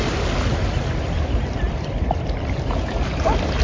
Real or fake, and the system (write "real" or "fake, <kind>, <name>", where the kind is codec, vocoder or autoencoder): real